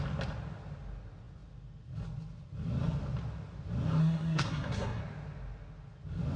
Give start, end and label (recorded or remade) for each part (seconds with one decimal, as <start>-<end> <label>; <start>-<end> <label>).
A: 0.0-4.0 recorded; 4.0-5.0 remade; 5.0-6.4 recorded